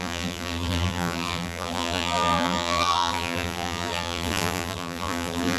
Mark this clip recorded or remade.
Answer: remade